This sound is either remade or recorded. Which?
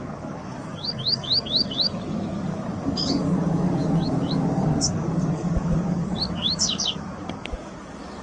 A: remade